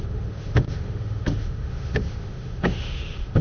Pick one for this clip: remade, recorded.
remade